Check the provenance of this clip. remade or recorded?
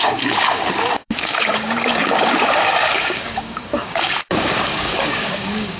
remade